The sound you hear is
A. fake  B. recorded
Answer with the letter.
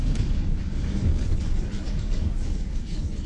A